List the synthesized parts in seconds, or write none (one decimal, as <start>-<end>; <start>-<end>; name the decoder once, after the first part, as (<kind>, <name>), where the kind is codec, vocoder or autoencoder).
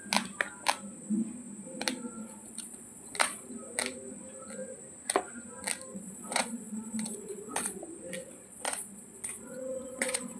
2.2-3.5 (vocoder, Vocos); 5.9-7.8; 8.2-10.4